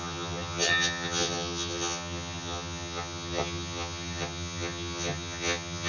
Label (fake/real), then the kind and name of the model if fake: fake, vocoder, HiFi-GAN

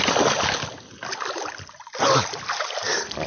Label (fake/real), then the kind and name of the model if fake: real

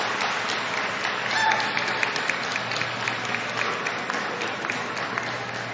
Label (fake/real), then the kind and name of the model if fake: real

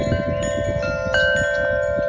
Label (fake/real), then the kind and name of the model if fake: real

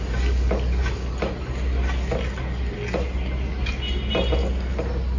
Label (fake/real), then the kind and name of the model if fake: real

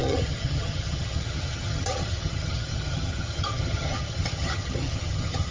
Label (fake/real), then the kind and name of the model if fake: fake, vocoder, HiFi-GAN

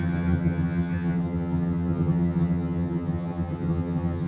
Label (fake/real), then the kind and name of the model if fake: fake, vocoder, HiFi-GAN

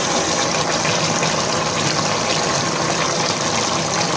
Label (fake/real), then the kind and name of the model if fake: real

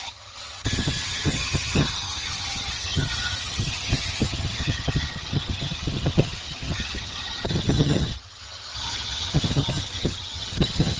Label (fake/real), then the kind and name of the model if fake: fake, vocoder, HiFi-GAN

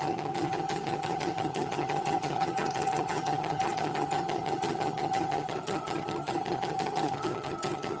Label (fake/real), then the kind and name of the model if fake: fake, vocoder, HiFi-GAN